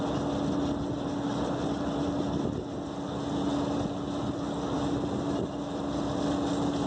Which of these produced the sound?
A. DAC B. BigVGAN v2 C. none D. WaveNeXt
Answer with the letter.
C